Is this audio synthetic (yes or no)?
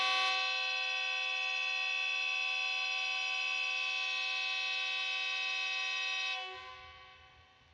no